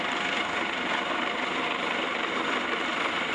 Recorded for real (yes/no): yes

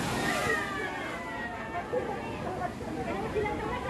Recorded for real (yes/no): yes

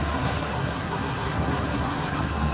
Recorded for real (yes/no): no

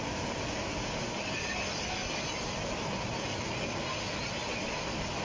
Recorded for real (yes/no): yes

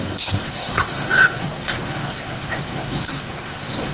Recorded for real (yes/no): no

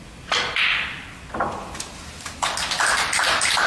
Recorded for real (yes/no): yes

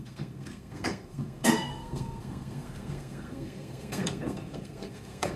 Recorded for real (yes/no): no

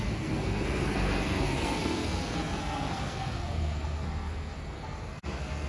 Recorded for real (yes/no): no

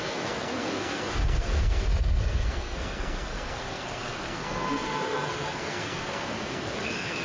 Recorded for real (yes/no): no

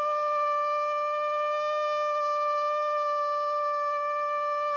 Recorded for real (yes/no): yes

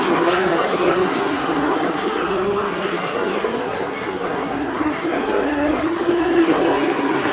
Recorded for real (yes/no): no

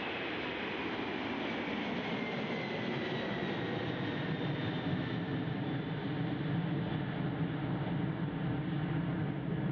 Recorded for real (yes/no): yes